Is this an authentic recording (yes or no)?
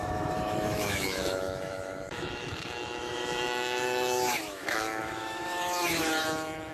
no